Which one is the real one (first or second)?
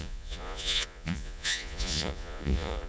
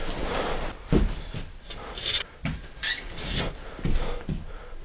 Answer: second